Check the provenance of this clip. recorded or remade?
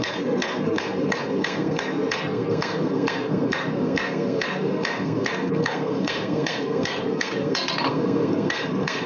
remade